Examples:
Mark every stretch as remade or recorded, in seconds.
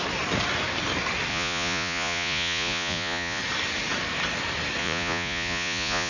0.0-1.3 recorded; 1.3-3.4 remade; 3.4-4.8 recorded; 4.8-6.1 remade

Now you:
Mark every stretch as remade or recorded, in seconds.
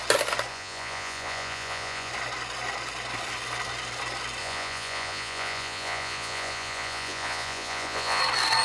0.0-0.5 recorded; 0.5-2.1 remade; 2.1-4.4 recorded; 4.4-8.2 remade; 8.2-8.6 recorded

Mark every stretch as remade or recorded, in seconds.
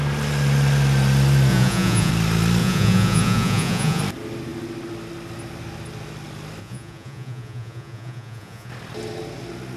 0.0-1.5 recorded; 1.5-2.1 remade; 2.1-2.6 recorded; 2.6-4.0 remade; 4.0-6.6 recorded; 6.6-8.7 remade; 8.7-9.8 recorded